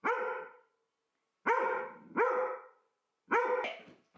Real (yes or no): yes